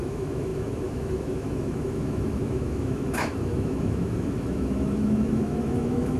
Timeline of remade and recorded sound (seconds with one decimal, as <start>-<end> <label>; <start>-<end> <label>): 0.0-6.2 remade